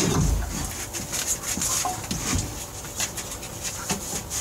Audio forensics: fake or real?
real